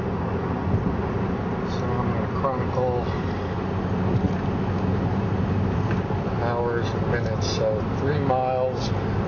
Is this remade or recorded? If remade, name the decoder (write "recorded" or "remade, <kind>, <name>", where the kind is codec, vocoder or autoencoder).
recorded